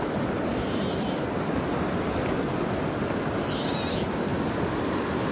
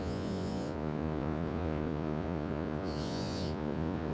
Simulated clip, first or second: second